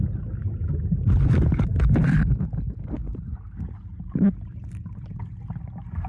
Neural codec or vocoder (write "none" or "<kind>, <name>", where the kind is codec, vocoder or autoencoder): none